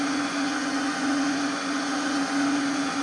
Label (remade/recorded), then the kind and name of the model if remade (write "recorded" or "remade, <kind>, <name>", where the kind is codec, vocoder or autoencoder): remade, vocoder, Vocos